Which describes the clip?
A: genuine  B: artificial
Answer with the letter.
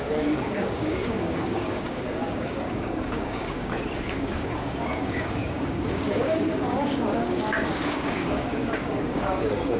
B